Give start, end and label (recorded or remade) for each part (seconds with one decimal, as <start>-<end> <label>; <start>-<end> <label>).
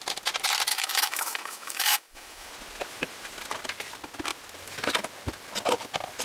0.0-0.7 recorded; 0.7-2.5 remade; 2.5-6.2 recorded